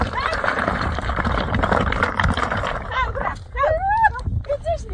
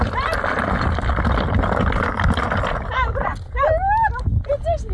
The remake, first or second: first